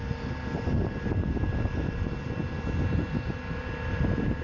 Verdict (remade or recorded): recorded